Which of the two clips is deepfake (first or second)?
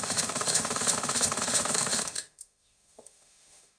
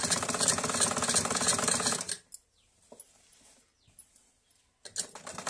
first